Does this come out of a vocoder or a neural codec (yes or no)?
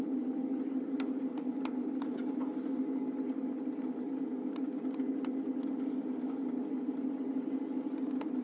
no